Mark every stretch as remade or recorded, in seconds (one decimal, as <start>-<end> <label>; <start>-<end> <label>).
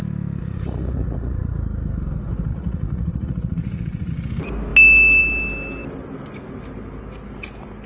0.0-0.4 recorded; 0.4-1.5 remade; 1.5-2.5 recorded; 2.5-4.1 remade; 4.1-7.9 recorded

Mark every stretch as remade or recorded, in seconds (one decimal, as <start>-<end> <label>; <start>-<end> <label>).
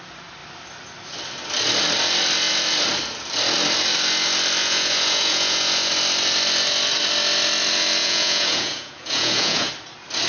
0.0-4.6 recorded; 4.6-5.9 remade; 5.9-8.0 recorded; 8.0-9.7 remade; 9.7-10.3 recorded